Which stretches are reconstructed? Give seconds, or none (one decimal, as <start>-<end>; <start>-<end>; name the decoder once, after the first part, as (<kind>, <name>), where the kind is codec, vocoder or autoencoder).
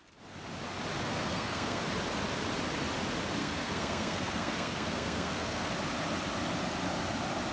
1.1-1.8 (codec, SNAC); 3.4-5.7